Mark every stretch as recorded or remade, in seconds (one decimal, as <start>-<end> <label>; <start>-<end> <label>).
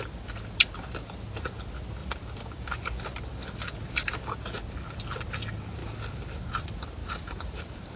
0.0-2.0 recorded; 2.0-2.9 remade; 2.9-7.0 recorded; 7.0-8.0 remade